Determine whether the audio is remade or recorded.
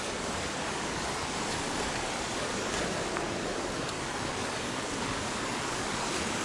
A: remade